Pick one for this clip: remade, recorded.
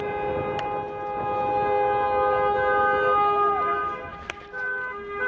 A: recorded